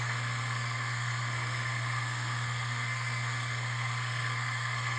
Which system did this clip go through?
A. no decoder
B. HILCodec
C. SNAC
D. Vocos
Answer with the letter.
C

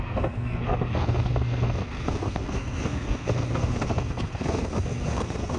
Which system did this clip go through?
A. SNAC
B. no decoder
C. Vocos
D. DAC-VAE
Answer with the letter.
A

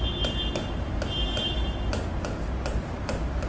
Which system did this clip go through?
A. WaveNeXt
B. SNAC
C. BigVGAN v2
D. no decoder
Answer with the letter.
D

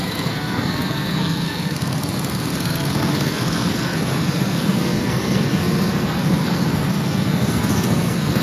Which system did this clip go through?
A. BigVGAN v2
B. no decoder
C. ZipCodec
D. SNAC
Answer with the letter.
D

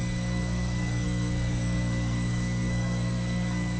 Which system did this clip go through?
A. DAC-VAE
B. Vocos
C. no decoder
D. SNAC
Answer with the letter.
D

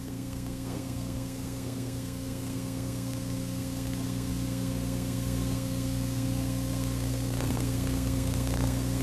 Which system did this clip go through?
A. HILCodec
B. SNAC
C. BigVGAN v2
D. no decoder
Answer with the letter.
B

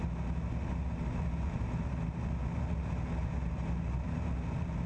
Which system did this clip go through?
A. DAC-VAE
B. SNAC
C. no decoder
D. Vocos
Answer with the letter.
C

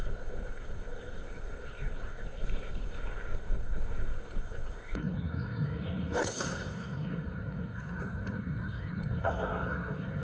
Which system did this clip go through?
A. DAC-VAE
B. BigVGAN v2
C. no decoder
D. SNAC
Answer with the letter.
D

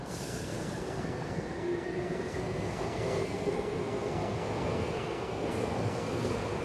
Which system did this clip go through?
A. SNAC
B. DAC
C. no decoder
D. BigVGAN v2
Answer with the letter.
A